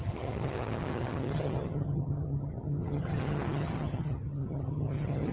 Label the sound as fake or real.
fake